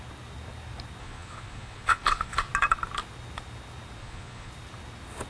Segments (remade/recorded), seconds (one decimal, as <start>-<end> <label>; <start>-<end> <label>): 0.0-1.0 recorded; 1.0-2.5 remade; 2.5-4.0 recorded; 4.0-4.5 remade; 4.5-5.3 recorded

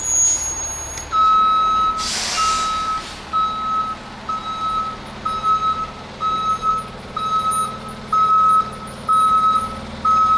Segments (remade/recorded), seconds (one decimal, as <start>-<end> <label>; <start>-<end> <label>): 0.0-10.4 recorded

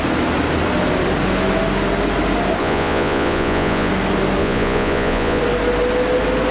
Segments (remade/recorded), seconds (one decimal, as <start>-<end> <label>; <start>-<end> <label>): 0.0-2.6 recorded; 2.6-3.9 remade; 3.9-4.4 recorded; 4.4-5.4 remade; 5.4-6.5 recorded

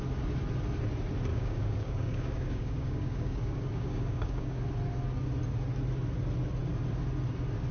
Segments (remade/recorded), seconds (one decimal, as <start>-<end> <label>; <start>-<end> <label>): 0.0-1.3 recorded; 1.3-4.6 remade; 4.6-7.7 recorded